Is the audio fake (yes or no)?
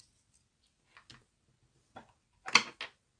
no